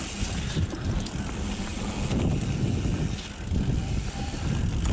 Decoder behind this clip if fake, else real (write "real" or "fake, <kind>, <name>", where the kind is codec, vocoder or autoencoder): real